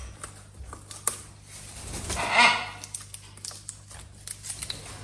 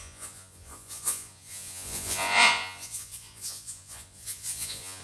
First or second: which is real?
first